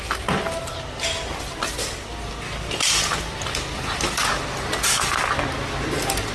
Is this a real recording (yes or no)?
yes